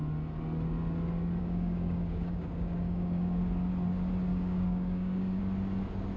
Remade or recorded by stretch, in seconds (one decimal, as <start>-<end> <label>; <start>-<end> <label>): 0.0-1.4 recorded; 1.4-3.5 remade; 3.5-4.3 recorded; 4.3-5.4 remade; 5.4-6.2 recorded